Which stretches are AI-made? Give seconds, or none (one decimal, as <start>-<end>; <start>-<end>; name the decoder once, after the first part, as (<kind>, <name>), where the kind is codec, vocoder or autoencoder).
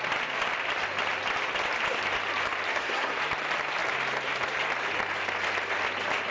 2.7-3.2 (codec, SNAC)